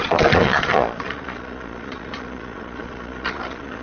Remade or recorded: remade